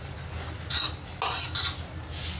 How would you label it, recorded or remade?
recorded